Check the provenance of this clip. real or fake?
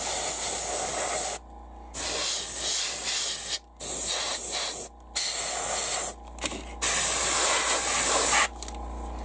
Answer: real